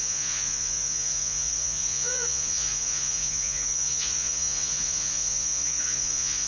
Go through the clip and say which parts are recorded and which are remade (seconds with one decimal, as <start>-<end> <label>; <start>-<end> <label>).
0.0-6.5 remade